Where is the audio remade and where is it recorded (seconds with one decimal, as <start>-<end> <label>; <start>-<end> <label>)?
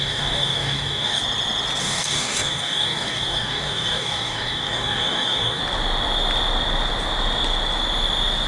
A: 0.0-1.2 remade; 1.2-1.8 recorded; 1.8-5.6 remade; 5.6-8.5 recorded